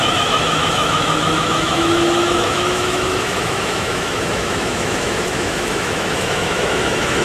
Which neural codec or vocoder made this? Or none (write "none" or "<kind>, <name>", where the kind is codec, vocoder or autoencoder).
autoencoder, DAC-VAE